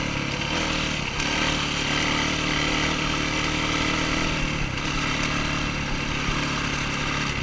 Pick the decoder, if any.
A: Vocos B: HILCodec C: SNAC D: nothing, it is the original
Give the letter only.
D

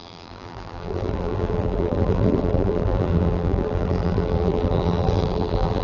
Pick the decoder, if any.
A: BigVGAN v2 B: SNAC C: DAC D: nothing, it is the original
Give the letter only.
A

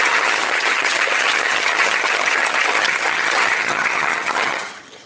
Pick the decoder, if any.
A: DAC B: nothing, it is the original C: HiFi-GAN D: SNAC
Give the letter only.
C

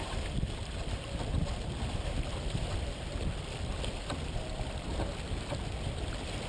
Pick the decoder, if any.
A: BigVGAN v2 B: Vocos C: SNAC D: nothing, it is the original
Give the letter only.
D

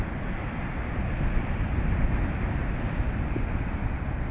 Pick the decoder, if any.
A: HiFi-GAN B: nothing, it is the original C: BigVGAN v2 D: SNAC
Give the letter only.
B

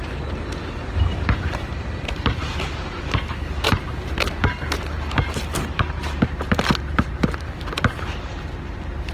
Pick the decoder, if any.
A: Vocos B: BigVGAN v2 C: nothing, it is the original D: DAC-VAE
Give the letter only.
B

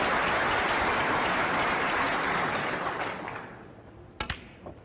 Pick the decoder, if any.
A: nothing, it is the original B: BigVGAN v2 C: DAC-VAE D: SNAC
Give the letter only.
A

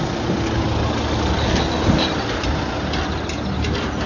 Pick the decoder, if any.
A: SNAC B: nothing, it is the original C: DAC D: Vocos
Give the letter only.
B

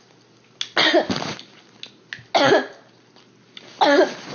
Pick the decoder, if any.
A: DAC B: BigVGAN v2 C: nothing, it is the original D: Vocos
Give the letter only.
C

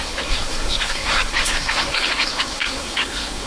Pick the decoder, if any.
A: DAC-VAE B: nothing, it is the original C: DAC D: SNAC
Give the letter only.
D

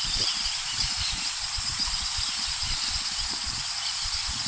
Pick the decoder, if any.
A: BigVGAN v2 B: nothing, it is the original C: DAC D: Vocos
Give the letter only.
A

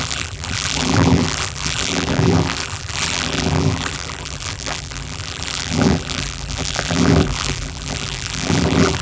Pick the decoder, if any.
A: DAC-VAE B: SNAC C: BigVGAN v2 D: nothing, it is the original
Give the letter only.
C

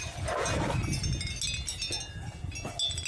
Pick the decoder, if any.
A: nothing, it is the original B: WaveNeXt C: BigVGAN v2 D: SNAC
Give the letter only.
A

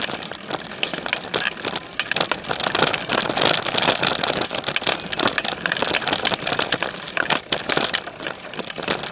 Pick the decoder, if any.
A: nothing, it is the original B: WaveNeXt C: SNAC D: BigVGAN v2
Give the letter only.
D